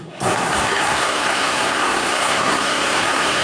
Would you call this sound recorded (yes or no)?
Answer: no